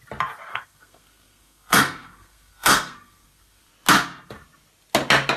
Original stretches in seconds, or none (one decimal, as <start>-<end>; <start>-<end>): 0.0-0.5; 3.7-5.4